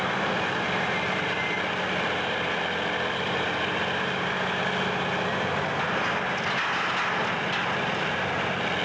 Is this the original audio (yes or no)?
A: yes